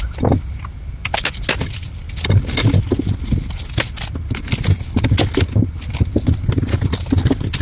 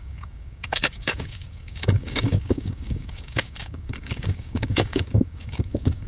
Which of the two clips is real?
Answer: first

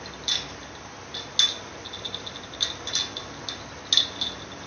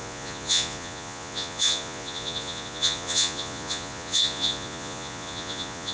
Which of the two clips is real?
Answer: first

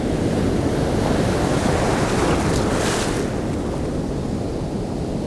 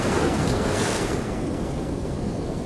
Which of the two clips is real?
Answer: first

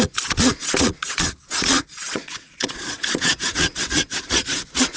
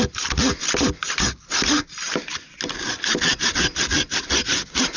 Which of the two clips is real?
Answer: second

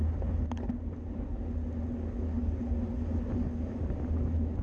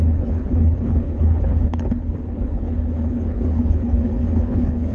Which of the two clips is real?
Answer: first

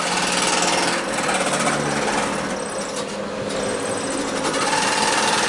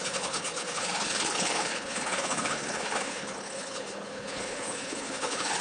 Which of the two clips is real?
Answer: first